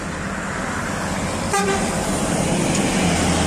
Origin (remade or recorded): recorded